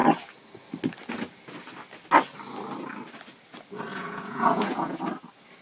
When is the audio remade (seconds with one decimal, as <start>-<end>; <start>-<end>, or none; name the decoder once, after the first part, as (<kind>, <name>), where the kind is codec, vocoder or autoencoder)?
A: 3.9-5.0 (vocoder, Vocos)